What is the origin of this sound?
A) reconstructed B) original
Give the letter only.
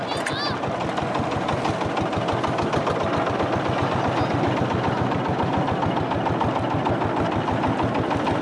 B